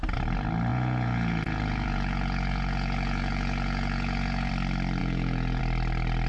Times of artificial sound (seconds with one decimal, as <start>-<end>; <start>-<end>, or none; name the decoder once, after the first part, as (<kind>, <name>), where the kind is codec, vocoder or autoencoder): 0.7-4.5 (vocoder, Vocos); 5.0-5.6